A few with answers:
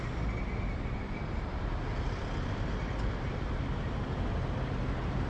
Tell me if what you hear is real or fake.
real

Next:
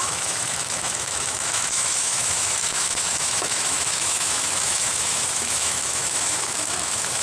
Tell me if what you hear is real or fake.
fake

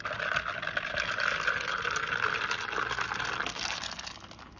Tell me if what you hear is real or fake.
real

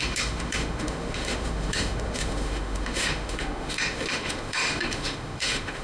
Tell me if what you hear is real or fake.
fake